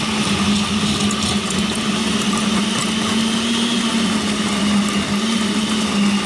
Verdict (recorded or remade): recorded